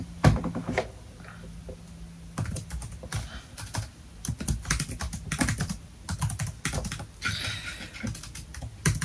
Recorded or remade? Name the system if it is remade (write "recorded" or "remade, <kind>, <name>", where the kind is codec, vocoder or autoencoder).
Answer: recorded